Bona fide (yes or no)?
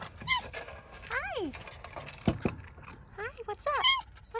yes